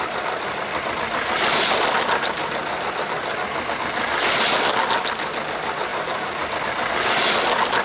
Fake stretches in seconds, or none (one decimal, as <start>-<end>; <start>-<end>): 5.9-6.6